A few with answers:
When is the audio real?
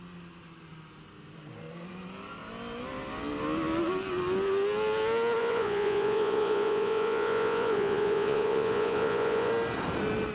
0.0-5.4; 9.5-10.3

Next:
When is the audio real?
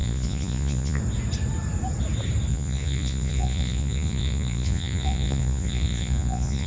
1.0-2.5